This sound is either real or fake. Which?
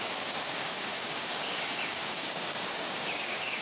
fake